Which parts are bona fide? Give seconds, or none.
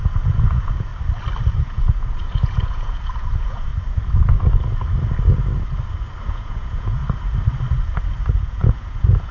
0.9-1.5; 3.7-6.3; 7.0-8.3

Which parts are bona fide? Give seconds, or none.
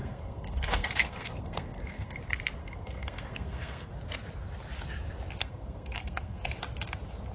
2.2-2.6; 3.9-5.4; 6.4-7.3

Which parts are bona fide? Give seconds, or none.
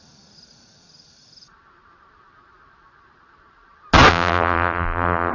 0.0-4.1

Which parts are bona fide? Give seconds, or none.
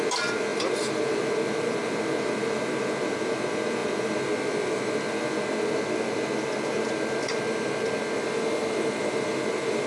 0.0-0.5; 1.2-9.9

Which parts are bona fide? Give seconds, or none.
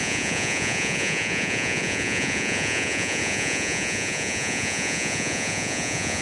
none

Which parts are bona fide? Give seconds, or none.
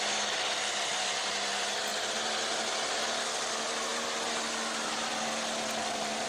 0.0-6.3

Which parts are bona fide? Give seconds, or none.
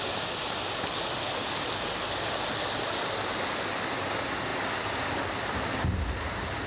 0.0-6.7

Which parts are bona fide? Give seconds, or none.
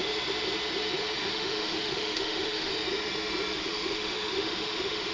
0.0-1.2; 2.7-3.6